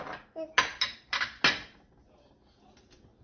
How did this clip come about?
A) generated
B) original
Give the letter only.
B